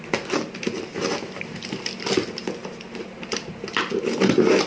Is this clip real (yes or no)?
yes